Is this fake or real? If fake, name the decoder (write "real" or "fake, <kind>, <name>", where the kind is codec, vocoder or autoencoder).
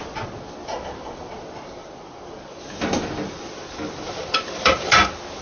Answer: real